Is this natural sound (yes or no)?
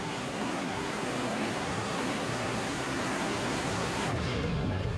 no